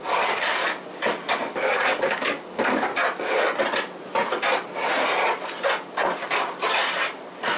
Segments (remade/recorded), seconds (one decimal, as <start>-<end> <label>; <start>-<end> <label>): 0.0-0.6 remade; 0.6-1.3 recorded; 1.3-2.9 remade; 2.9-7.6 recorded